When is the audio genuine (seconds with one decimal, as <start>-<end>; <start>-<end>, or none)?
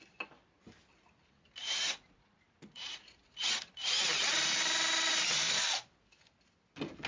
0.0-1.6; 3.7-7.1